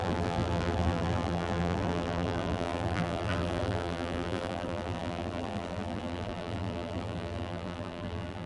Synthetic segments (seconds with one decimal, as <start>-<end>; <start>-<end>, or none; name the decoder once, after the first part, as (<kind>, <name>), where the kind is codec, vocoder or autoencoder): 0.0-8.5 (vocoder, BigVGAN v2)